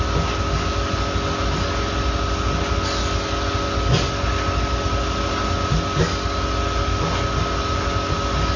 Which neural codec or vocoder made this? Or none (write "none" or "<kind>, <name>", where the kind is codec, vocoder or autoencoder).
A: none